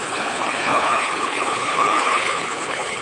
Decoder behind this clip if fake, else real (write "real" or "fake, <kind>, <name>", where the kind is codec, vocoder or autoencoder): fake, codec, HILCodec